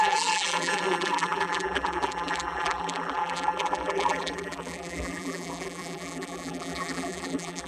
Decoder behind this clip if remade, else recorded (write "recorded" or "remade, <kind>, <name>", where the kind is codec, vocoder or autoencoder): remade, vocoder, BigVGAN v2